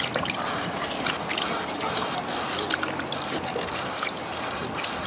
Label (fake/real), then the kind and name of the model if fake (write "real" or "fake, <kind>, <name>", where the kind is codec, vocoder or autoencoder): real